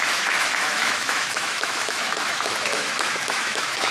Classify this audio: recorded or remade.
remade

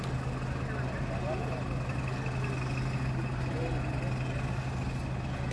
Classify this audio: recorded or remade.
recorded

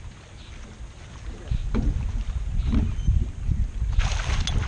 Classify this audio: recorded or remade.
recorded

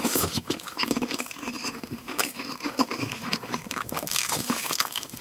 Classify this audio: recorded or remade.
remade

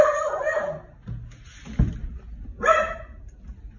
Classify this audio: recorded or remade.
recorded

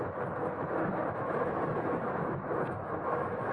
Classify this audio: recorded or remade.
remade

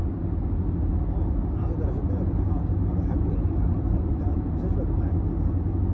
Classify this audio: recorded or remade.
recorded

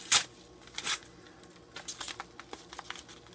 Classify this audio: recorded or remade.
recorded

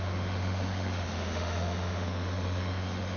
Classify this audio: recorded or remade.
remade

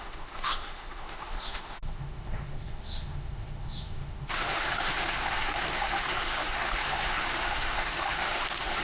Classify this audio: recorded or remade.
remade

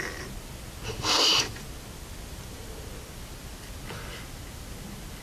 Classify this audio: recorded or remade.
recorded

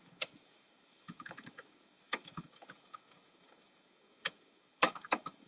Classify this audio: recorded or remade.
remade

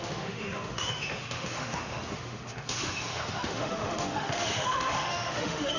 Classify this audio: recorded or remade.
remade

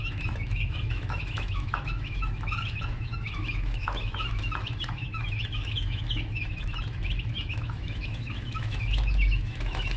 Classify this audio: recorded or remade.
remade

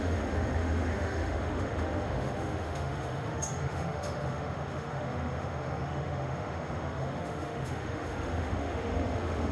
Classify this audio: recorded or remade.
remade